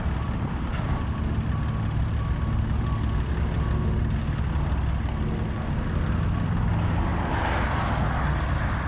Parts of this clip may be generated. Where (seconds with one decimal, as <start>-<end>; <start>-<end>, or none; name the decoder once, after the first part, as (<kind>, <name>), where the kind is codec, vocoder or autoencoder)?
none